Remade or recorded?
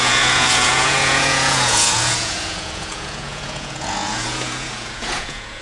remade